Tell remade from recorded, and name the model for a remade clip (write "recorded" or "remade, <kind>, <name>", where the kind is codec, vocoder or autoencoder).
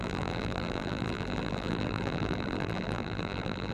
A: remade, vocoder, BigVGAN v2